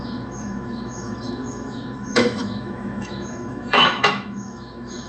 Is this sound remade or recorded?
remade